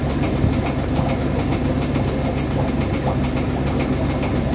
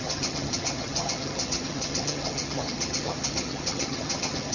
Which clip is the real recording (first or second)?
first